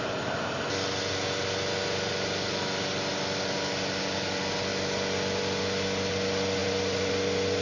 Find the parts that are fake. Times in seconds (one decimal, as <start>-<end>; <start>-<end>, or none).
6.6-7.1